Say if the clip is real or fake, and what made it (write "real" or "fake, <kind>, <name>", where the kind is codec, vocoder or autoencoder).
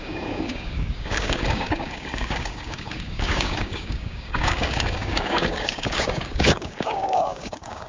fake, codec, DAC